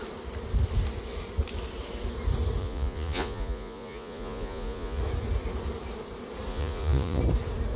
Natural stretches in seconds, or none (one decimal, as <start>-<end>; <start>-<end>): 0.0-2.6; 5.0-6.5; 7.2-7.8